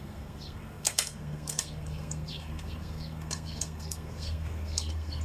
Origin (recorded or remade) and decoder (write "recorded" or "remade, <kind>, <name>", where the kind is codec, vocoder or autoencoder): remade, codec, SNAC